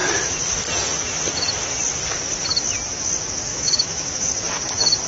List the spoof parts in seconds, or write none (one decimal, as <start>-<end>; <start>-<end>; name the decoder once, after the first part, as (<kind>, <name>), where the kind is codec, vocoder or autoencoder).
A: 3.5-4.3 (autoencoder, DAC-VAE)